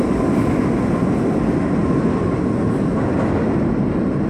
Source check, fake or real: real